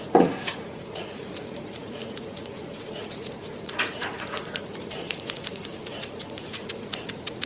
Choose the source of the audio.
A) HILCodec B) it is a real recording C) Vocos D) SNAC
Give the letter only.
C